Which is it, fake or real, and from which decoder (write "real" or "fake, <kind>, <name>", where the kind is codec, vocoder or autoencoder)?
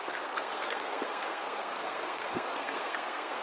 fake, codec, SNAC